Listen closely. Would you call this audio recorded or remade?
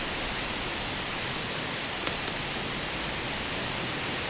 recorded